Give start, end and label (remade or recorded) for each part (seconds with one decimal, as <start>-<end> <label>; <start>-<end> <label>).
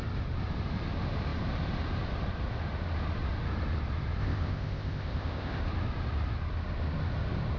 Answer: 0.0-4.2 recorded; 4.2-5.6 remade; 5.6-7.6 recorded